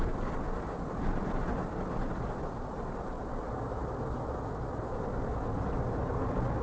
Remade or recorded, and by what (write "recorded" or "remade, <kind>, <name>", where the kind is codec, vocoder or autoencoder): recorded